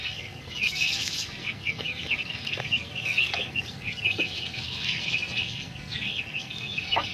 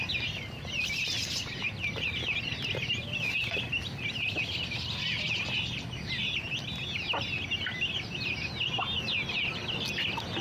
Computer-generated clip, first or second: first